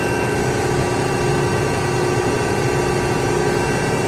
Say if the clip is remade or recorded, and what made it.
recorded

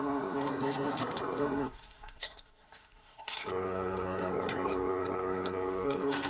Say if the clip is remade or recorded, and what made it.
remade, codec, SNAC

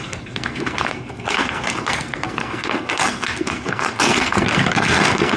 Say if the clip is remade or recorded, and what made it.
remade, codec, SNAC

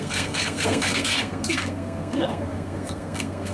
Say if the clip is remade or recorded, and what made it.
remade, codec, SNAC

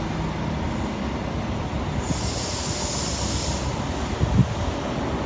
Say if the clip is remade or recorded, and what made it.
recorded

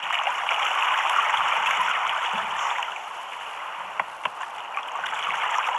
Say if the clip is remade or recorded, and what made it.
recorded